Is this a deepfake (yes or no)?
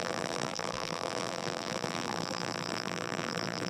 yes